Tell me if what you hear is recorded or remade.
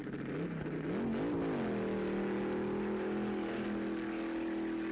recorded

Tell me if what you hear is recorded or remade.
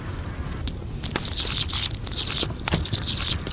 recorded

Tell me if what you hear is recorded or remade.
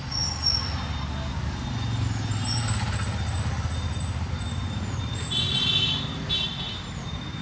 recorded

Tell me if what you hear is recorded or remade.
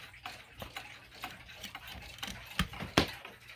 recorded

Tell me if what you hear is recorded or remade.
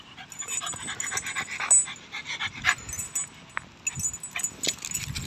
recorded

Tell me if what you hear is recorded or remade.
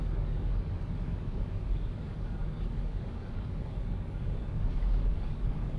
remade